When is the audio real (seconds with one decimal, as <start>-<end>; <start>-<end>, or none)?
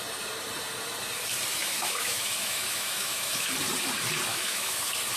0.0-1.5; 3.5-4.3; 4.8-5.2